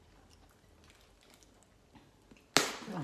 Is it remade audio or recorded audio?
recorded